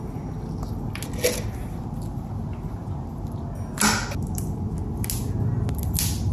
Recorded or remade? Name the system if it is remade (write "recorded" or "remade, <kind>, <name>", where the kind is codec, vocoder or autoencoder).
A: recorded